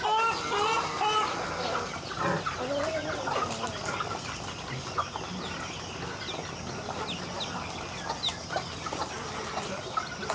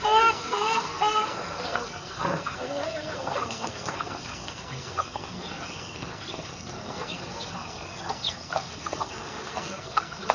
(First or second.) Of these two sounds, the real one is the first